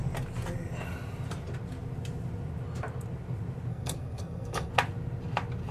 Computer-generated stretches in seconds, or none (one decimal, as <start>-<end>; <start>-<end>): 3.7-4.7